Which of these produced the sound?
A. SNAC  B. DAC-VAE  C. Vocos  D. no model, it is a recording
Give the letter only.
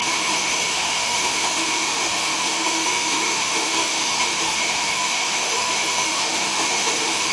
B